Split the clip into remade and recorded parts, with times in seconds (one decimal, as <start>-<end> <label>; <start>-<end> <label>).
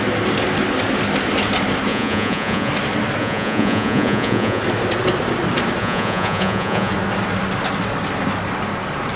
0.0-1.9 recorded; 1.9-2.7 remade; 2.7-3.2 recorded; 3.2-4.6 remade; 4.6-5.8 recorded; 5.8-6.9 remade; 6.9-9.2 recorded